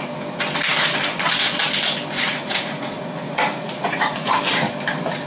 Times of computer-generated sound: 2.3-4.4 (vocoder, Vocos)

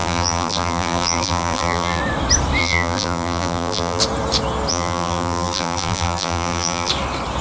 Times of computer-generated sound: 0.0-2.0 (vocoder, BigVGAN v2); 2.6-4.0; 4.7-6.9

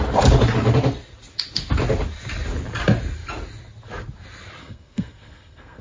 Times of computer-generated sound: 4.6-5.8 (codec, SNAC)

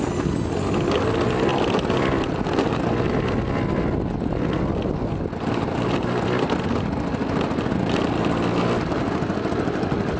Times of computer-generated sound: none

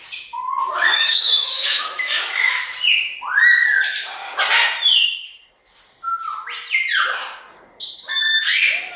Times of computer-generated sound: 0.6-2.6 (autoencoder, DAC-VAE)

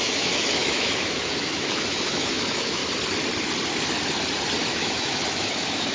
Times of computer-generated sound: 0.0-2.8 (autoencoder, DAC-VAE); 4.7-5.9

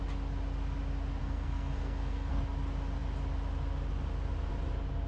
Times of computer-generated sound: 1.2-2.3 (codec, SNAC)

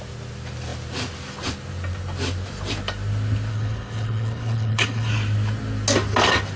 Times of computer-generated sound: 3.5-5.1 (codec, HILCodec)